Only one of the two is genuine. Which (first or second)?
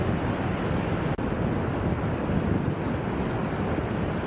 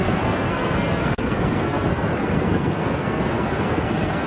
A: first